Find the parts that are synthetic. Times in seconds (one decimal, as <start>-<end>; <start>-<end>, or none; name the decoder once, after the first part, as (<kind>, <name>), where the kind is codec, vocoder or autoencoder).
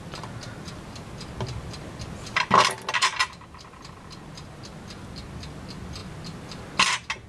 3.1-3.8 (vocoder, BigVGAN v2)